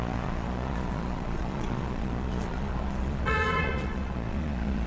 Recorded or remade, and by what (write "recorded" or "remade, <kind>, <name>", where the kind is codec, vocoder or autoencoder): remade, vocoder, Vocos